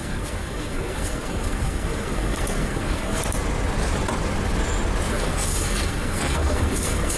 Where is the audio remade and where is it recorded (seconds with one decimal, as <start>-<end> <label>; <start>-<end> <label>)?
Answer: 0.0-3.2 remade; 3.2-5.1 recorded; 5.1-7.2 remade